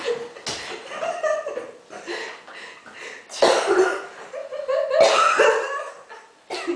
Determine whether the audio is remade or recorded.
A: recorded